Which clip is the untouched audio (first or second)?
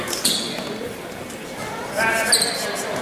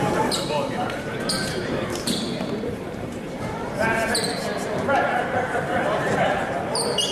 first